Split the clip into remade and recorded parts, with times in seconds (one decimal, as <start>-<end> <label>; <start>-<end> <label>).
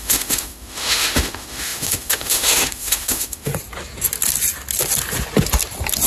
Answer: 0.0-3.5 remade; 3.5-6.1 recorded